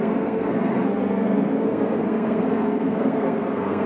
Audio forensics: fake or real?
fake